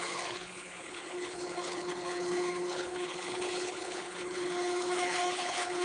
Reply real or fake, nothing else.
fake